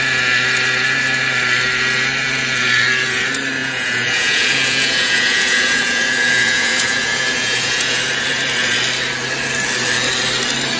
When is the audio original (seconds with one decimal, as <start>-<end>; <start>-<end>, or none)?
0.0-3.6; 8.0-10.8